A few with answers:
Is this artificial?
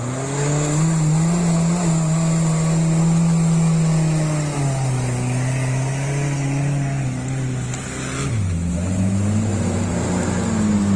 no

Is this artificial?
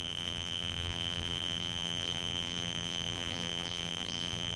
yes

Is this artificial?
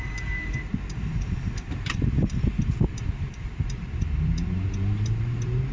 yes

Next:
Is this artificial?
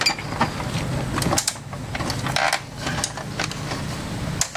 no